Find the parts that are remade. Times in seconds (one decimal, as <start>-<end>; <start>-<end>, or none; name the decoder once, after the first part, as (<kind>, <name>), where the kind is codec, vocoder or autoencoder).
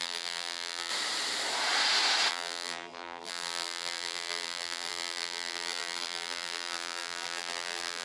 0.0-0.9 (vocoder, BigVGAN v2); 2.3-8.0